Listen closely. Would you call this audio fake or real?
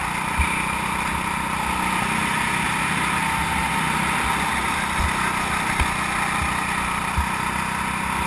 real